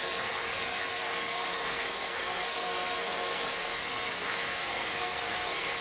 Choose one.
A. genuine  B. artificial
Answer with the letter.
B